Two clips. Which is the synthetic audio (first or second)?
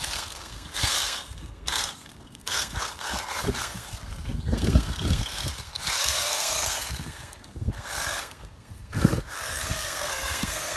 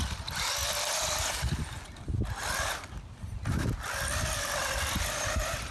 first